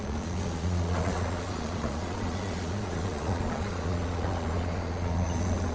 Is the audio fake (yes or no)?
yes